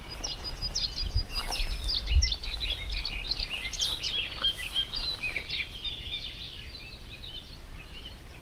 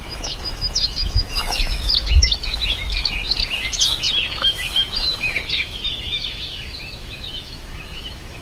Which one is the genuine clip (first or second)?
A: first